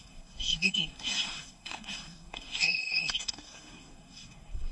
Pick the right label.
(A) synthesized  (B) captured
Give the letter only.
A